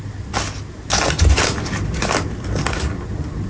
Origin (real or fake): real